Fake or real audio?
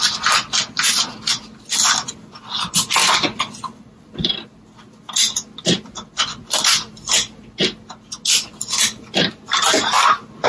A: real